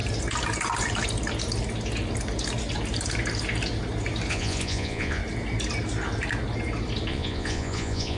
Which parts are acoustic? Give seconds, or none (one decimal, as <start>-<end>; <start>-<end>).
0.0-4.3; 5.2-7.1